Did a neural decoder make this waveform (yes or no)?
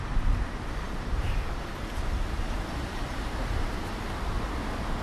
yes